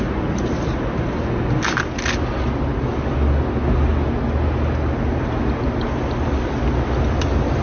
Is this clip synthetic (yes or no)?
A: no